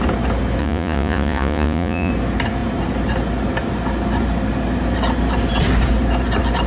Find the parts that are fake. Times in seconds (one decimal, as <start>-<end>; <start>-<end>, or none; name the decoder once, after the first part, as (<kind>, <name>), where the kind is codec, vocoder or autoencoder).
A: 0.6-2.1 (vocoder, Vocos)

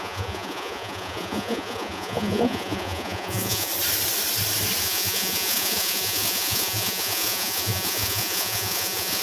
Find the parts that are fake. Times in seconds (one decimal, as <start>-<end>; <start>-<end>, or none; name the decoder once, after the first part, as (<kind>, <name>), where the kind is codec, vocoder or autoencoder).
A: 0.0-3.7 (vocoder, Vocos); 4.8-9.2